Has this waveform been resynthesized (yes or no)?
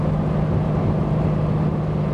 no